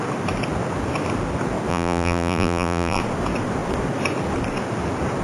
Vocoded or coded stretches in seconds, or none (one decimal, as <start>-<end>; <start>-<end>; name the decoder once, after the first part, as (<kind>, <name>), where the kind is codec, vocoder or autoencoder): 1.7-3.0 (vocoder, BigVGAN v2)